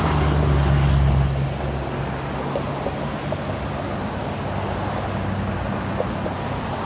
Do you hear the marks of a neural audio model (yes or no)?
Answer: no